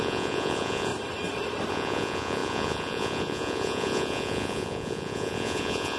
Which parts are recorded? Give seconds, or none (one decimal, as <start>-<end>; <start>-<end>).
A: 0.9-1.7